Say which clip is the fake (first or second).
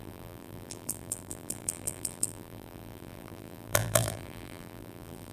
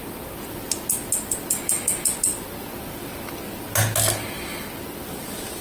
first